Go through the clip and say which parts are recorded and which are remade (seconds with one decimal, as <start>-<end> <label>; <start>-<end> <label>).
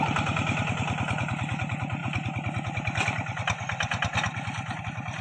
0.0-5.2 recorded